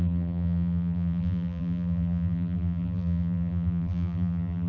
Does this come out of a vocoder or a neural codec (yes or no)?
yes